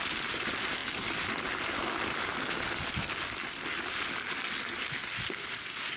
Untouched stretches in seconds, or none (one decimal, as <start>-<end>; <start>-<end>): 0.0-6.0